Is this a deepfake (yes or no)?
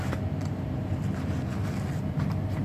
no